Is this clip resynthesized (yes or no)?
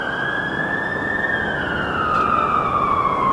no